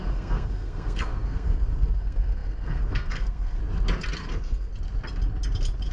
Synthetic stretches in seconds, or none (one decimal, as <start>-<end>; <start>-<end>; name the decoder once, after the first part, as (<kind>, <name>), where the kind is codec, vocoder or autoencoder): 0.0-3.6 (codec, SNAC); 4.3-4.7